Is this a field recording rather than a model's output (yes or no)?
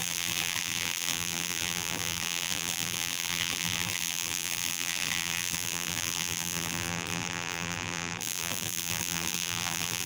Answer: no